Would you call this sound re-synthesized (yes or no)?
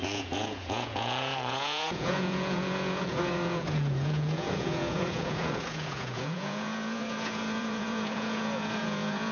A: yes